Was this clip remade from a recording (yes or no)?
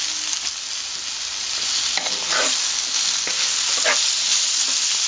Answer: no